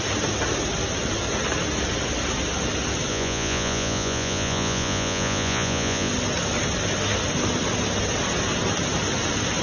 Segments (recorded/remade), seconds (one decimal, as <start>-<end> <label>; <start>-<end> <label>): 0.0-3.1 recorded; 3.1-6.1 remade; 6.1-9.6 recorded